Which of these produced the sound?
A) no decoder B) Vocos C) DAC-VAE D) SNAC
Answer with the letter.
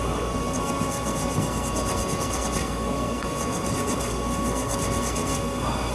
D